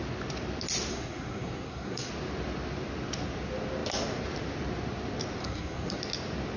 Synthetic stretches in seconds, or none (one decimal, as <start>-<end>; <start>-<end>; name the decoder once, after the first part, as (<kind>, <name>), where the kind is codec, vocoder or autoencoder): 0.9-2.1 (codec, SNAC); 5.4-6.0